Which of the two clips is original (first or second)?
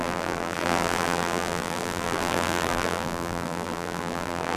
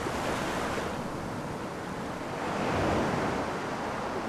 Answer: second